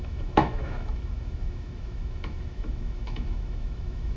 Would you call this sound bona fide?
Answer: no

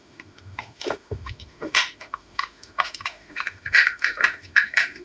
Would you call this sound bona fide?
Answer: no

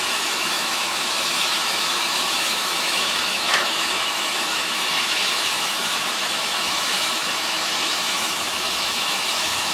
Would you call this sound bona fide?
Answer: no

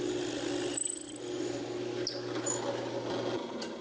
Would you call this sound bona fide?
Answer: yes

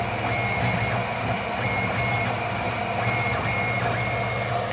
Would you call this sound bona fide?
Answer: yes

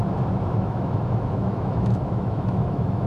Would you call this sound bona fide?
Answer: no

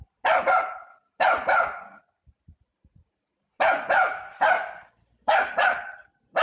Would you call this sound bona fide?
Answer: yes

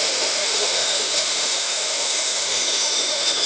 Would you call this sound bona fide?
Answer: no